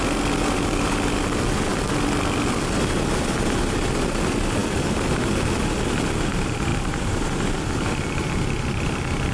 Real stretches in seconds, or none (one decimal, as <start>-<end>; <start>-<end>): 0.0-6.7; 7.3-9.3